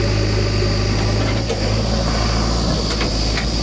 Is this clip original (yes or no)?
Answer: yes